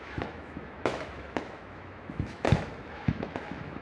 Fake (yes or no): yes